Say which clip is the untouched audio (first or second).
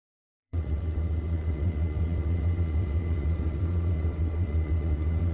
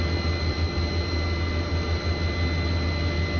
second